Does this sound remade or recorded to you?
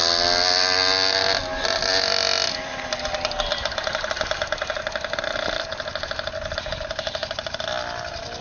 recorded